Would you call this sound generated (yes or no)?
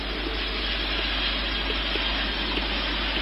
no